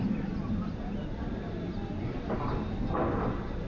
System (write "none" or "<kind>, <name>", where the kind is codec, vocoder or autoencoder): none